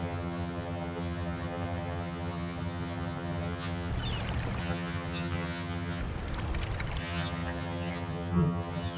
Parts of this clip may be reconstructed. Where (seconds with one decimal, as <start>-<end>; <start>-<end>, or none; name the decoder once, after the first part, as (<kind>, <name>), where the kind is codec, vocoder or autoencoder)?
0.0-3.9 (vocoder, HiFi-GAN); 4.6-6.0; 7.0-9.0